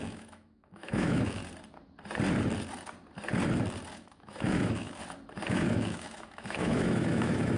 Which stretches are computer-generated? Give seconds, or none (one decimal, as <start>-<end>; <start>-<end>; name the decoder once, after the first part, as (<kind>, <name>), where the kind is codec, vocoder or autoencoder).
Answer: 0.0-1.4 (autoencoder, DAC-VAE); 3.9-5.0; 5.5-7.6